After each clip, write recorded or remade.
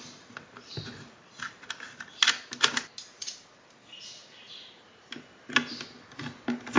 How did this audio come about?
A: recorded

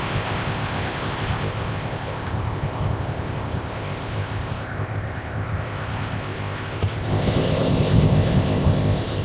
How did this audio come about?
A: remade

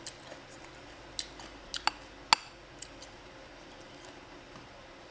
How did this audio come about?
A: recorded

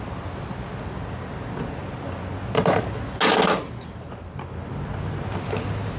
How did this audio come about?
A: recorded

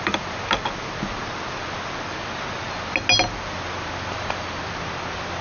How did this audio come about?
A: recorded